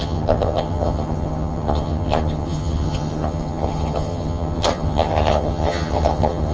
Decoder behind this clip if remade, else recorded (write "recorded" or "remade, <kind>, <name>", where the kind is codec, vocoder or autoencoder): remade, vocoder, HiFi-GAN